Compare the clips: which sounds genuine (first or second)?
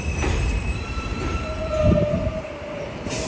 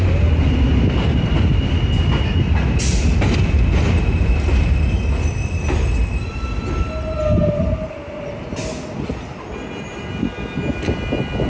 second